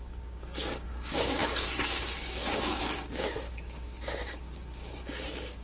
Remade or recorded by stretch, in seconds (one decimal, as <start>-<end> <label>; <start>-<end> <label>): 0.0-5.6 remade